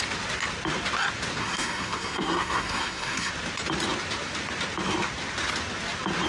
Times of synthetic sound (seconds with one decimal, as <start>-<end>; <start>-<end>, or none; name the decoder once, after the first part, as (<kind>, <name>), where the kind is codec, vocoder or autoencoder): 1.4-3.3 (codec, SNAC)